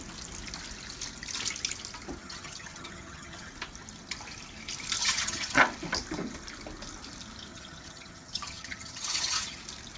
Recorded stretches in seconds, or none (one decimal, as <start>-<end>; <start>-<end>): 0.0-2.2; 3.5-5.0; 5.6-7.5; 9.6-10.0

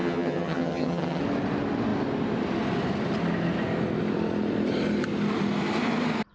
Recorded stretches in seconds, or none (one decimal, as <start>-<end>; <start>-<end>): 1.2-6.3

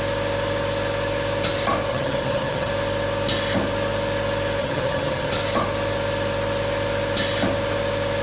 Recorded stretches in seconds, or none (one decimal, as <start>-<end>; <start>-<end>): 0.0-1.9; 2.7-4.6; 5.3-8.2

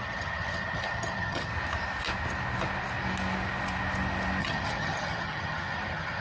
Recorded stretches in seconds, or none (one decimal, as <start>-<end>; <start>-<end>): 1.5-4.4